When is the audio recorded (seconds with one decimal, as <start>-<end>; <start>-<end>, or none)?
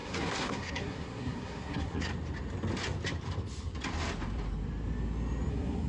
2.1-5.5